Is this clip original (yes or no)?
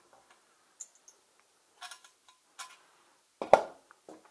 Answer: yes